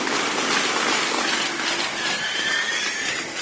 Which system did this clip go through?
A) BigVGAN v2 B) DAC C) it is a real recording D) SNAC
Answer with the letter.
C